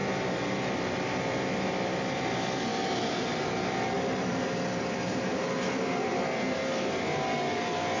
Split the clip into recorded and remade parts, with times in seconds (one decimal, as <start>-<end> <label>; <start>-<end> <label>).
0.0-8.0 recorded